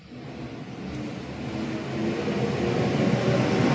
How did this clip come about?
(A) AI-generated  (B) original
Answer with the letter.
B